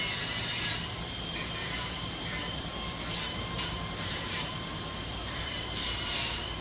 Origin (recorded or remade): remade